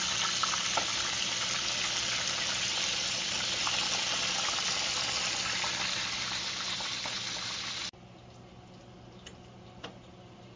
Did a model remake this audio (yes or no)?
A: no